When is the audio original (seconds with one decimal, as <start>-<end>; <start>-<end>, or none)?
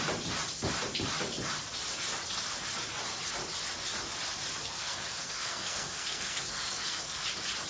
0.0-4.6; 7.2-7.7